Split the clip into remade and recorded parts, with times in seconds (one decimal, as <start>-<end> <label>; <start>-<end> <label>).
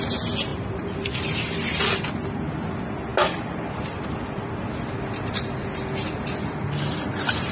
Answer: 0.0-0.5 recorded; 0.5-2.0 remade; 2.0-3.1 recorded; 3.1-5.4 remade; 5.4-7.5 recorded